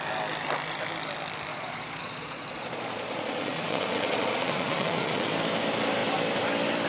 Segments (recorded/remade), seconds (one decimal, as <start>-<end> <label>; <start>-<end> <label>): 0.0-1.5 recorded; 1.5-5.3 remade; 5.3-6.9 recorded